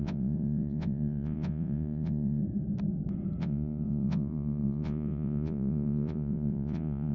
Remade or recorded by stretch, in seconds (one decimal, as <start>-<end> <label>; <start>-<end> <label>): 0.0-2.4 remade; 2.4-3.4 recorded; 3.4-7.1 remade